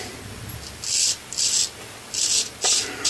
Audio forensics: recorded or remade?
recorded